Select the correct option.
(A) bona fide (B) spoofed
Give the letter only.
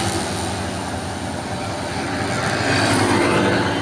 A